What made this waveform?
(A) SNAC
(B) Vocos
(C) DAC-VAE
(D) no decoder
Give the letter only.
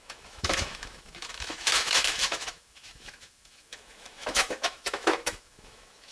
C